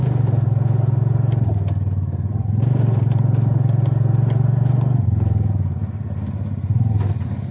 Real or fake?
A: real